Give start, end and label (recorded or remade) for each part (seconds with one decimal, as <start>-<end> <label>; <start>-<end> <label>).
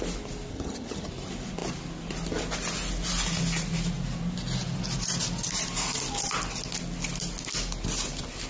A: 0.0-0.5 recorded; 0.5-1.1 remade; 1.1-8.5 recorded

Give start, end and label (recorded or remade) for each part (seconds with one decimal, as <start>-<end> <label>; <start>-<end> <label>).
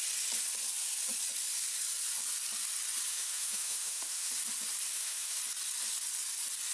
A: 0.0-3.1 recorded; 3.1-4.3 remade; 4.3-4.9 recorded; 4.9-5.4 remade; 5.4-6.7 recorded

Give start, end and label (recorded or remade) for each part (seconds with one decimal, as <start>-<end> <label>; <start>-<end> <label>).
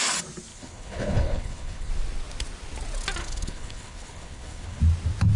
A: 0.0-0.5 recorded; 0.5-1.9 remade; 1.9-3.2 recorded; 3.2-4.8 remade; 4.8-5.4 recorded